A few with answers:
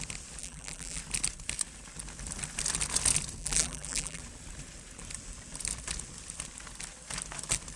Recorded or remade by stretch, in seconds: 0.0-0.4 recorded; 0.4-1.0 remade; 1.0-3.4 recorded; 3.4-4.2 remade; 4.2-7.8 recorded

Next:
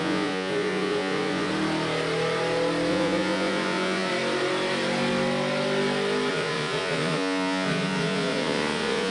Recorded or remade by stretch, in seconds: 0.0-1.5 remade; 1.5-2.9 recorded; 2.9-4.1 remade; 4.1-6.3 recorded; 6.3-9.1 remade

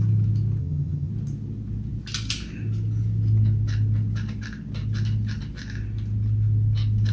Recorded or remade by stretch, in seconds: 0.0-0.6 recorded; 0.6-1.1 remade; 1.1-7.1 recorded

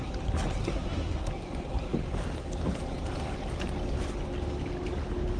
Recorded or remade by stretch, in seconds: 0.0-0.6 recorded; 0.6-1.3 remade; 1.3-5.4 recorded

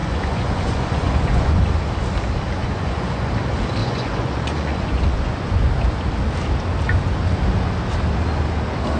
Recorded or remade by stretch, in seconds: 0.0-1.6 remade; 1.6-2.6 recorded; 2.6-3.3 remade; 3.3-3.8 recorded; 3.8-5.7 remade; 5.7-9.0 recorded